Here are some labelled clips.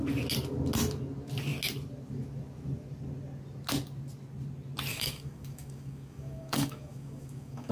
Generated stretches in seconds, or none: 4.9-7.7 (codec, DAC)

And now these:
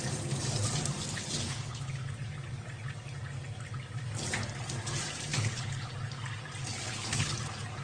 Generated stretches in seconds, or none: 1.1-1.9 (codec, HILCodec); 5.3-5.9; 6.7-7.3